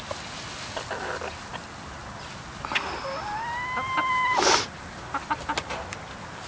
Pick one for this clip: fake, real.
real